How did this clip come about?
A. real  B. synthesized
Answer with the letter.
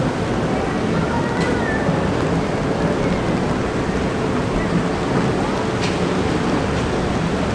A